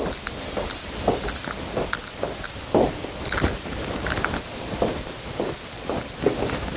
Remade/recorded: recorded